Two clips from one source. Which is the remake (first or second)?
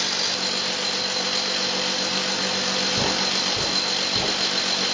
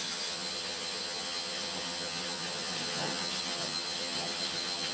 second